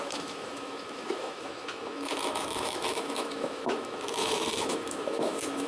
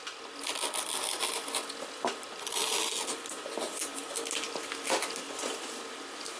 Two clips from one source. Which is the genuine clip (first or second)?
second